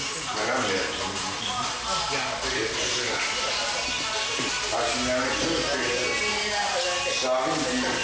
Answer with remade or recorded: recorded